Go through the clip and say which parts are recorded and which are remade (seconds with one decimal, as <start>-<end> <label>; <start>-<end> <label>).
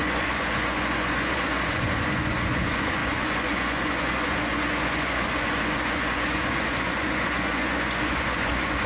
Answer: 0.0-8.9 remade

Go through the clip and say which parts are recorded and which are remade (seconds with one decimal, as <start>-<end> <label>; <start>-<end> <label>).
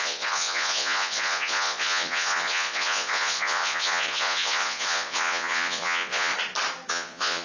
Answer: 0.0-6.3 remade; 6.3-6.9 recorded; 6.9-7.4 remade